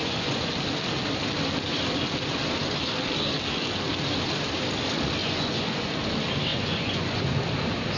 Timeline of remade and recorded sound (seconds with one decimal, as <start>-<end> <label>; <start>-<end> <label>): 0.0-0.5 remade; 0.5-5.2 recorded; 5.2-5.9 remade; 5.9-6.5 recorded; 6.5-7.2 remade; 7.2-8.0 recorded